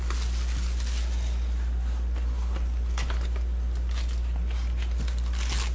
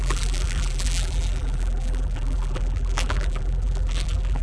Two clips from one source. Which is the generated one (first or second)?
second